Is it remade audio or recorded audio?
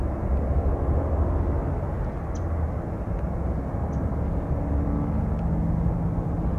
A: recorded